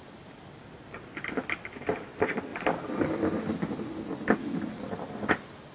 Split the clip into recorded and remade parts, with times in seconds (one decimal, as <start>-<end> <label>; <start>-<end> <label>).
0.0-5.7 recorded